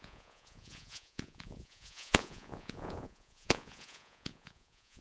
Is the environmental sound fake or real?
fake